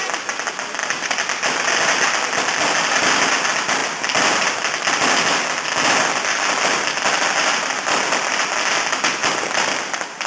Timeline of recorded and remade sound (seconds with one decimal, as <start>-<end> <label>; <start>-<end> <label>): 0.0-10.3 recorded

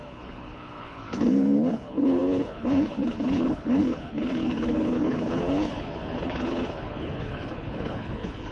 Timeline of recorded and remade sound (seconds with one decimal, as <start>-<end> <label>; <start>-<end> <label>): 0.0-8.5 remade

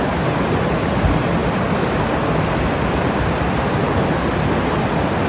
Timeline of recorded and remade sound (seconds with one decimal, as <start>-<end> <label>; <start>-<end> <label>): 0.0-5.3 recorded

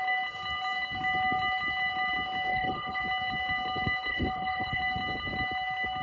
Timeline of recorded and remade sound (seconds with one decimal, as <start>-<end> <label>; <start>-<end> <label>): 0.0-2.5 recorded; 2.5-3.0 remade; 3.0-4.1 recorded; 4.1-4.8 remade; 4.8-6.0 recorded